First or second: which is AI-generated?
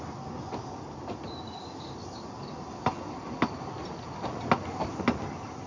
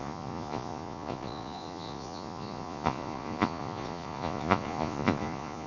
second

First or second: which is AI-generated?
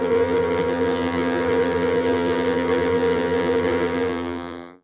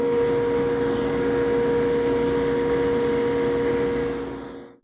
first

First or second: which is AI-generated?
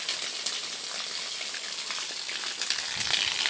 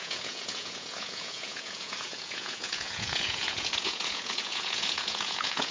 second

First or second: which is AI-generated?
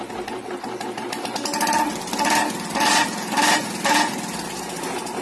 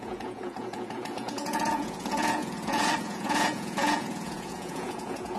second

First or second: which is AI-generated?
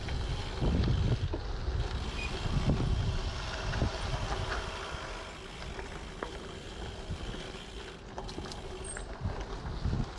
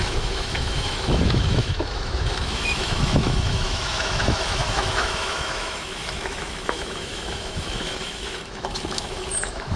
second